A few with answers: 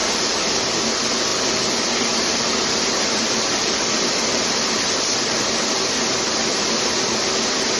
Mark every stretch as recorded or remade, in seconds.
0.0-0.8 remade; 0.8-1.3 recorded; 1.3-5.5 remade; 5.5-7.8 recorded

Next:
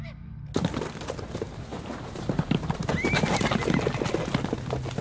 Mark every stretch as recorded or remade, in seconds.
0.0-1.7 recorded; 1.7-2.9 remade; 2.9-5.0 recorded

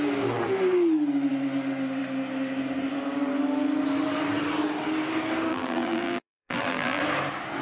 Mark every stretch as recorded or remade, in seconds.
0.0-5.5 recorded; 5.5-7.0 remade; 7.0-7.6 recorded

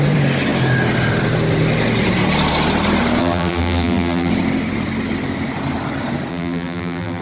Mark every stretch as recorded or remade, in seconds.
0.0-3.2 recorded; 3.2-4.3 remade; 4.3-6.3 recorded; 6.3-7.2 remade

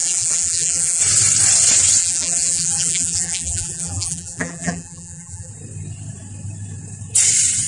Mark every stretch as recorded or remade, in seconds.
0.0-1.0 remade; 1.0-2.0 recorded; 2.0-5.5 remade; 5.5-7.7 recorded

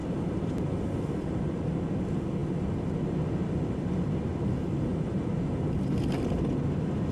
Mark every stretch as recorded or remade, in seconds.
0.0-1.7 remade; 1.7-4.9 recorded; 4.9-5.9 remade; 5.9-7.1 recorded

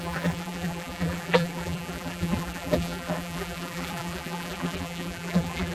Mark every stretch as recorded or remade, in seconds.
0.0-5.7 remade